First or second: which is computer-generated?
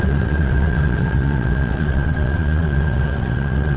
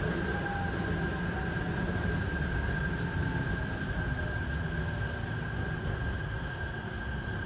first